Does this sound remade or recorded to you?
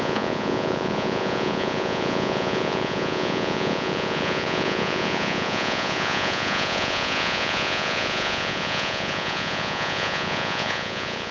remade